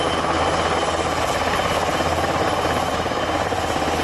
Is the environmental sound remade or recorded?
recorded